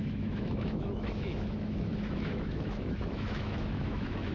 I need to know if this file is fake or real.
fake